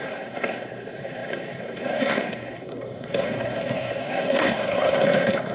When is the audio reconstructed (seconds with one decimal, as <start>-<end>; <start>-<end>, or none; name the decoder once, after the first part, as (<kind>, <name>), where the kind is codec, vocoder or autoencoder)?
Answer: 0.0-5.5 (codec, SNAC)